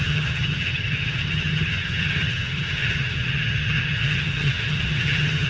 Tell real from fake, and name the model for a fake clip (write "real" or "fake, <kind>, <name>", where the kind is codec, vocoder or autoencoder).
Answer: fake, vocoder, HiFi-GAN